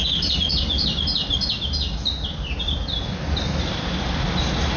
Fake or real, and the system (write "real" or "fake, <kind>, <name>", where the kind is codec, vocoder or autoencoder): real